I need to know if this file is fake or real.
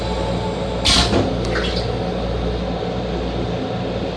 real